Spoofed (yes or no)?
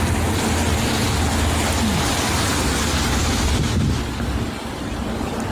no